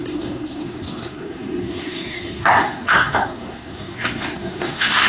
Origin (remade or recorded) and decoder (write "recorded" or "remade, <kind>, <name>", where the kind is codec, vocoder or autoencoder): remade, codec, SNAC